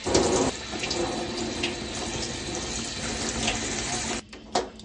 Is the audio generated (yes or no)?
no